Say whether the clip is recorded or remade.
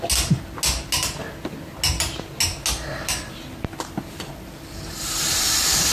recorded